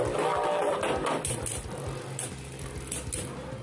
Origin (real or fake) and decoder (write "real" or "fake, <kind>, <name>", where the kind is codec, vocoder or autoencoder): real